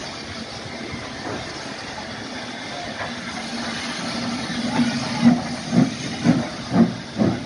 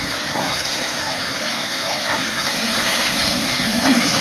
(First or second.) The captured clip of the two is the first